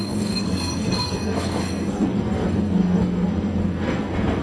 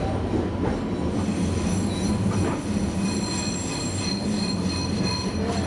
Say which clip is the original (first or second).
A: second